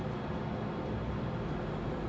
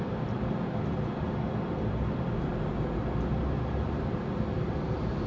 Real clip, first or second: first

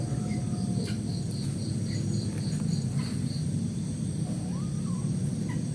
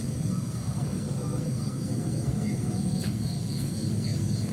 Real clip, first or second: first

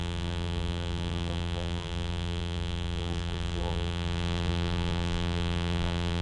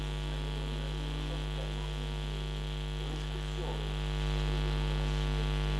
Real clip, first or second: second